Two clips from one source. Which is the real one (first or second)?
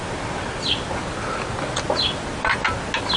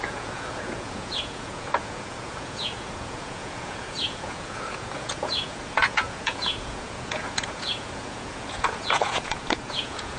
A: first